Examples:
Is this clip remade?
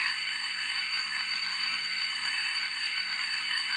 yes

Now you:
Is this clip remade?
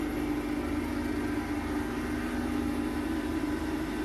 no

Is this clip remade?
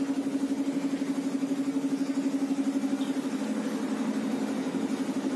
no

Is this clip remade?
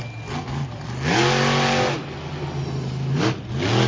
no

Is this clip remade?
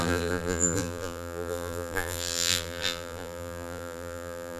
yes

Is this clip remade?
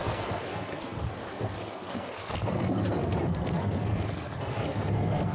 yes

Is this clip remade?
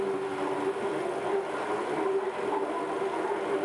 no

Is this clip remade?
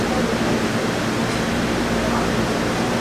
no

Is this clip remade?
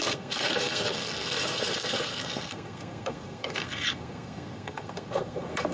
yes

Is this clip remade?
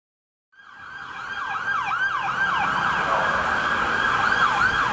no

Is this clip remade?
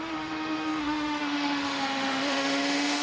yes